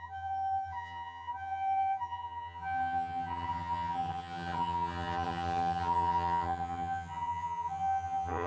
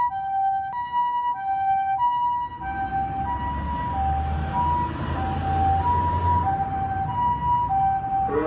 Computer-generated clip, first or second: first